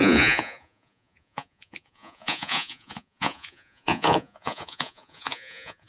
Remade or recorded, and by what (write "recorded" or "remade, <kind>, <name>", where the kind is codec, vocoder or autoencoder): remade, vocoder, Vocos